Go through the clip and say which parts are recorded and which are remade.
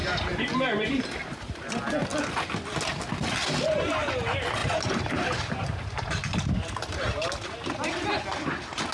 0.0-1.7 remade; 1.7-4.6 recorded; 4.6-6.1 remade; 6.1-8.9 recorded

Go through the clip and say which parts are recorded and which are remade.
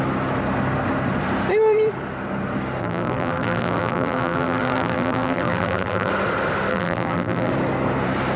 0.0-2.8 recorded; 2.8-6.1 remade; 6.1-6.7 recorded; 6.7-7.5 remade; 7.5-8.4 recorded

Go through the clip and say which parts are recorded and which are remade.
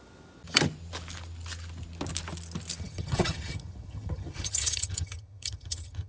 0.0-2.8 recorded; 2.8-6.1 remade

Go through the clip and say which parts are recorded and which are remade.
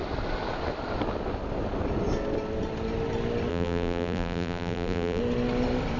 0.0-3.5 recorded; 3.5-5.2 remade; 5.2-6.0 recorded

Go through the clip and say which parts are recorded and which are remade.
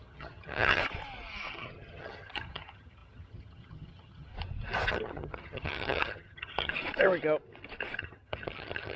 0.0-0.8 remade; 0.8-1.5 recorded; 1.5-4.3 remade; 4.3-4.9 recorded; 4.9-6.7 remade; 6.7-8.0 recorded; 8.0-9.0 remade